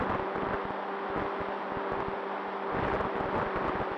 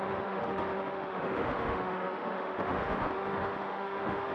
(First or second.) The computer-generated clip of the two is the second